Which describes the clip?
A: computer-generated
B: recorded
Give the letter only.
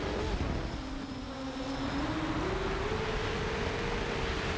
B